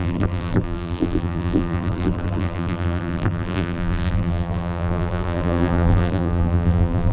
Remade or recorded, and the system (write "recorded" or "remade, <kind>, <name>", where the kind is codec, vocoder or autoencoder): remade, vocoder, BigVGAN v2